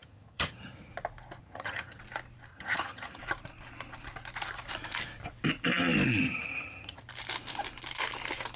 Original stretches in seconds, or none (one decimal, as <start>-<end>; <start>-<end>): 0.9-1.4; 2.0-2.5; 3.2-6.2; 7.0-8.6